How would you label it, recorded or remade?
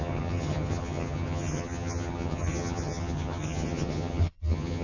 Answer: remade